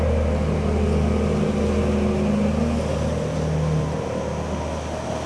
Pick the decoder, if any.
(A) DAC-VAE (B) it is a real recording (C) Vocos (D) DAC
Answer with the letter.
B